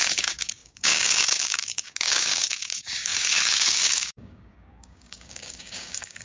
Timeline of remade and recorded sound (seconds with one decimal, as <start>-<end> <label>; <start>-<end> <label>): 0.0-6.2 remade